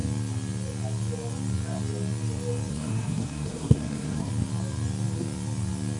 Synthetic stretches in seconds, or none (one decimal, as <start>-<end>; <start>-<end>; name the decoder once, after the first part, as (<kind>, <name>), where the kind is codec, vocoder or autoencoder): 2.7-4.3 (codec, SNAC)